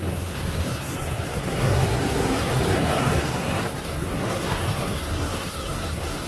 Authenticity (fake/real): fake